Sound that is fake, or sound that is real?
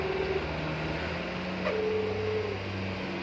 real